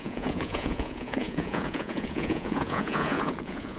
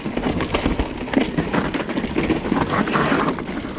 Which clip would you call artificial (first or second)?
first